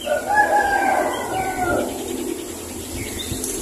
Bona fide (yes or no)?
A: no